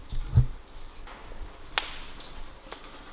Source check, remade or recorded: recorded